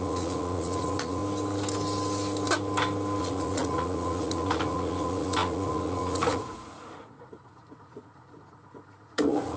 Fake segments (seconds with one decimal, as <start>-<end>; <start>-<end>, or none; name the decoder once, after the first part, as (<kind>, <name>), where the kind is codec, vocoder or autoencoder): 0.0-1.2 (vocoder, Vocos); 3.2-9.6